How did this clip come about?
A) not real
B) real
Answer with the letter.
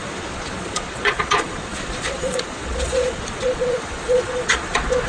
A